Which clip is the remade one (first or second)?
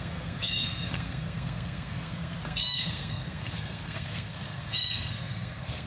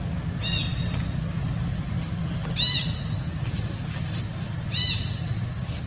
first